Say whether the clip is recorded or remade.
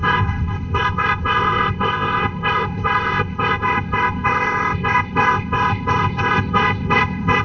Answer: remade